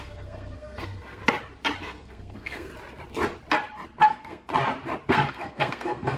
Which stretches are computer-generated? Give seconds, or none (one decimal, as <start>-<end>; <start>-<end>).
0.0-1.2; 1.8-2.7; 4.0-4.5; 5.1-6.2